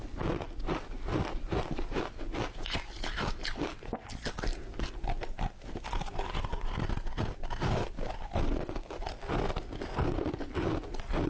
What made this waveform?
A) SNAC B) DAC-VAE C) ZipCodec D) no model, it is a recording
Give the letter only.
D